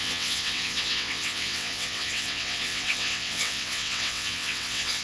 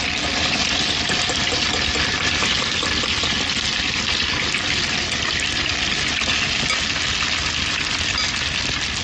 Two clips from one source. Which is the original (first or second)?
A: second